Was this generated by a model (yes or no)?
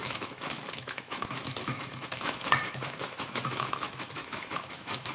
yes